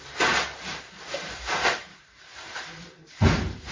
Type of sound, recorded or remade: remade